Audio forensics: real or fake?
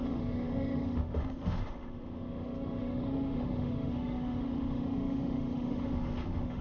fake